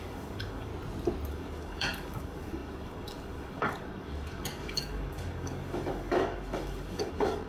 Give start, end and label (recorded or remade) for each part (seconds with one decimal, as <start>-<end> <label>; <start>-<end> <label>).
0.0-0.7 remade; 0.7-1.3 recorded; 1.3-7.5 remade